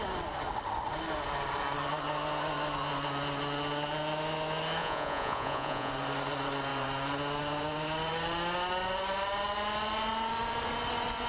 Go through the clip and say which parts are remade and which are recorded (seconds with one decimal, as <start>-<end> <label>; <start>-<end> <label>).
0.0-4.8 recorded; 4.8-5.9 remade; 5.9-11.3 recorded